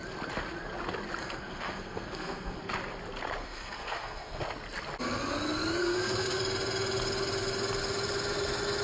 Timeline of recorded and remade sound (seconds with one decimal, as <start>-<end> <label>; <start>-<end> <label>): 0.0-1.2 recorded; 1.2-2.6 remade; 2.6-3.4 recorded; 3.4-4.4 remade; 4.4-5.8 recorded; 5.8-6.4 remade; 6.4-8.8 recorded